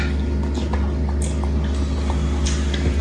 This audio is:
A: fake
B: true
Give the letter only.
B